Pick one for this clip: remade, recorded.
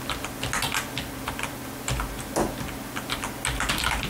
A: recorded